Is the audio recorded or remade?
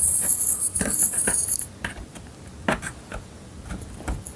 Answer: recorded